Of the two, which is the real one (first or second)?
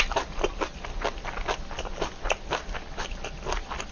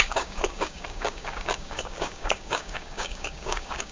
first